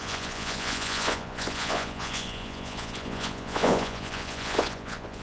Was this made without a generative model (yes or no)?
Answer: no